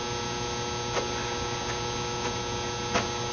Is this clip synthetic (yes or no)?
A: no